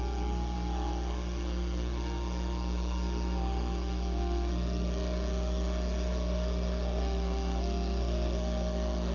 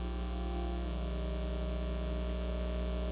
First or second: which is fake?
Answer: first